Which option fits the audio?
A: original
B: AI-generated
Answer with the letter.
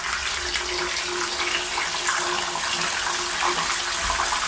A